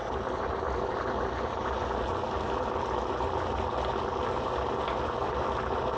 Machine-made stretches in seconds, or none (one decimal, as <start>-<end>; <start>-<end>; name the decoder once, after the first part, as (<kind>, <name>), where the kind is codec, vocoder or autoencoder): none